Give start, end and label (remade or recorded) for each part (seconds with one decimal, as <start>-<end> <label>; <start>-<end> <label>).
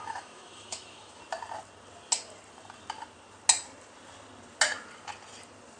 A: 0.0-1.2 remade; 1.2-5.8 recorded